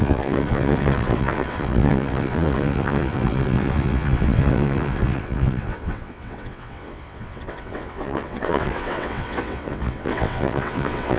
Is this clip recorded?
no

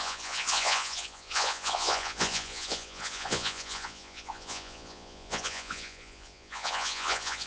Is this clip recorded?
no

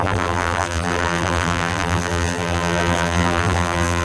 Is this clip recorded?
no